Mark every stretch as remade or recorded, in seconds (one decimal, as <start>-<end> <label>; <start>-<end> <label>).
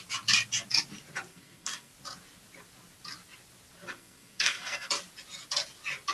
0.0-1.3 recorded; 1.3-1.9 remade; 1.9-3.9 recorded; 3.9-4.9 remade; 4.9-6.1 recorded